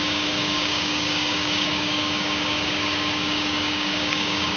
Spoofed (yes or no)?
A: yes